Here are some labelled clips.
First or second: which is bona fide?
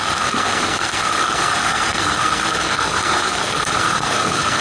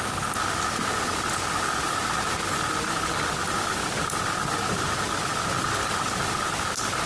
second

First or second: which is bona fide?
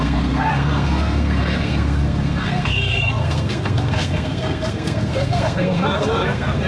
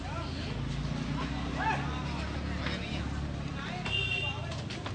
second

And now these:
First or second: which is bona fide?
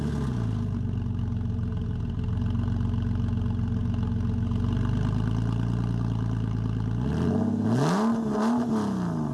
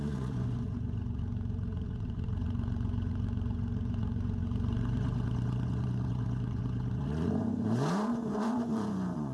first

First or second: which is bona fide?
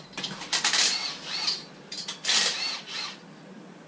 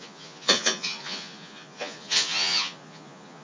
first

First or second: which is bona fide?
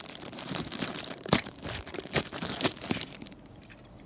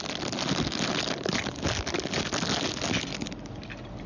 second